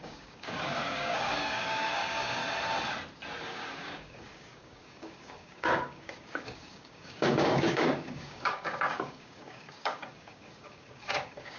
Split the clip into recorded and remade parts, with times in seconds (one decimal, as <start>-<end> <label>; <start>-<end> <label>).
0.0-2.4 remade; 2.4-3.4 recorded; 3.4-11.6 remade